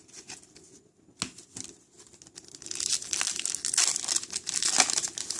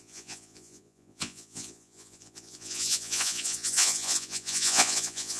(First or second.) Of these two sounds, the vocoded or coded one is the second